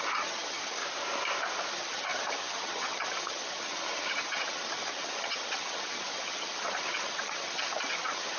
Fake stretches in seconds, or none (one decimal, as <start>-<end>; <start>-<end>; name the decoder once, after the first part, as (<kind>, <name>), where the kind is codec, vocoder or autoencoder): 0.0-0.8 (vocoder, HiFi-GAN); 1.7-8.4